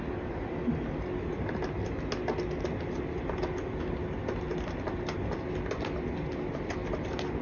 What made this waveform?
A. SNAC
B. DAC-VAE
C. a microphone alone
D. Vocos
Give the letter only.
C